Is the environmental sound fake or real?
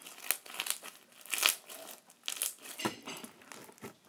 real